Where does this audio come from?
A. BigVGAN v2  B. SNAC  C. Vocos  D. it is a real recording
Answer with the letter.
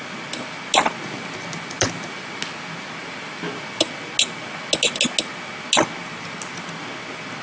D